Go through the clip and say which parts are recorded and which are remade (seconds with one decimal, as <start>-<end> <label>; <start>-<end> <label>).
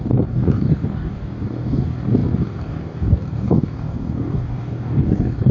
0.0-5.5 remade